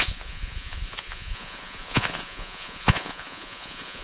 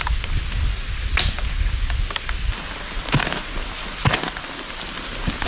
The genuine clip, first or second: second